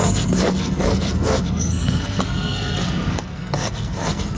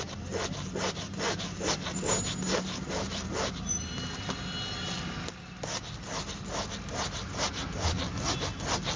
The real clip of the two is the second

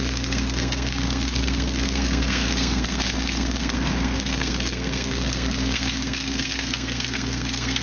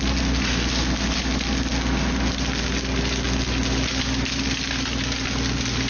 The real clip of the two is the second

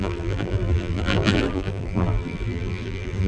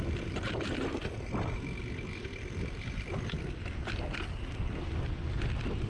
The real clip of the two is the second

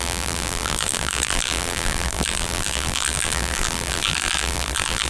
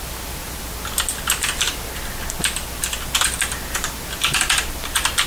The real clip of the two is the second